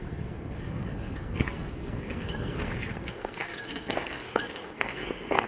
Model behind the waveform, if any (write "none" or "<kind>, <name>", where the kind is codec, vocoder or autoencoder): codec, SNAC